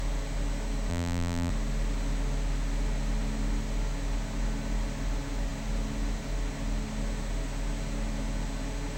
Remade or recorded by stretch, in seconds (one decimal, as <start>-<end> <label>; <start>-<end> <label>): 0.0-0.9 recorded; 0.9-1.5 remade; 1.5-9.0 recorded